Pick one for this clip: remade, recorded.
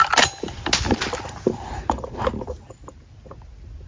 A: recorded